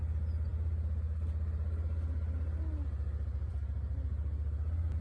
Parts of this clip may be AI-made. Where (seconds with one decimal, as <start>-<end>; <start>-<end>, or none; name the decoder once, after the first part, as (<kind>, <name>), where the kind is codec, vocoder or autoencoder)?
none